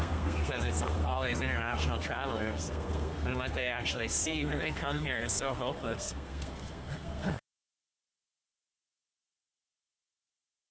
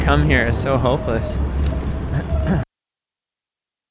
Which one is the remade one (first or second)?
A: first